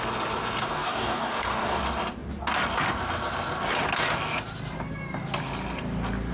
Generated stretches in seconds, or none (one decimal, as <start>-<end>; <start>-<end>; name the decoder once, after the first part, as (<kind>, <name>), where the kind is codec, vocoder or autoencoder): 0.7-1.8 (codec, DAC)

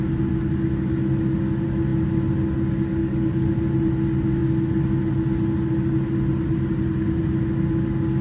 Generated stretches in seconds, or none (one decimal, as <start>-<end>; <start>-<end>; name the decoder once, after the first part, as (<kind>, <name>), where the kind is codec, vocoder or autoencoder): 3.0-3.5 (codec, DAC)

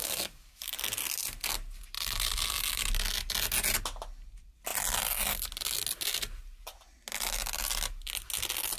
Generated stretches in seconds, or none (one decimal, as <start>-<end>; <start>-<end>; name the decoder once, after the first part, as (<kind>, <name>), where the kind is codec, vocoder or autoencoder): 0.0-0.6 (codec, DAC)